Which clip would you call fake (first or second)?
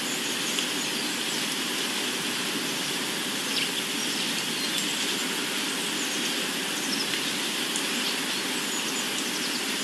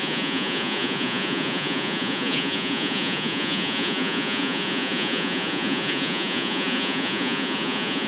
second